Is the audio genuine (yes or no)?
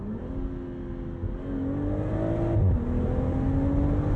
yes